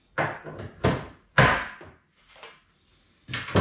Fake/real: real